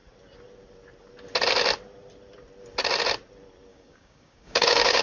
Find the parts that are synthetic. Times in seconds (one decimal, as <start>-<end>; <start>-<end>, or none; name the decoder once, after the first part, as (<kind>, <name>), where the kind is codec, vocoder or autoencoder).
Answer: 3.7-5.0 (codec, DAC)